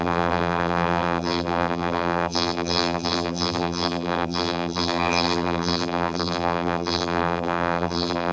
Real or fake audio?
fake